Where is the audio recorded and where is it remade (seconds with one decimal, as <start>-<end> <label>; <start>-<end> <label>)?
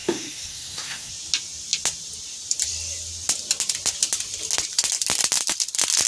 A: 0.0-1.1 remade; 1.1-6.1 recorded